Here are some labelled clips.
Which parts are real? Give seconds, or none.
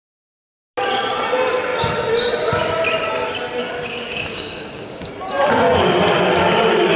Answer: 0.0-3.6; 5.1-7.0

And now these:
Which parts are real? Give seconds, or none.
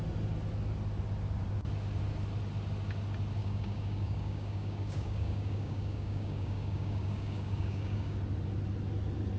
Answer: 0.0-3.4; 8.2-9.4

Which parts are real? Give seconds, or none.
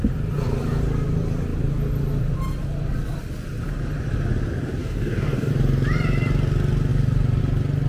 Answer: 0.0-4.8; 5.5-7.9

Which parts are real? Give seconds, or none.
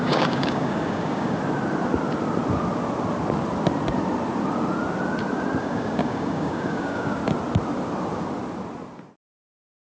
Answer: 1.4-5.6; 7.2-9.2